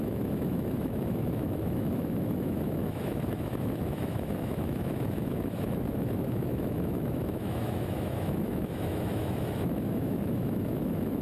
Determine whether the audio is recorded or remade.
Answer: remade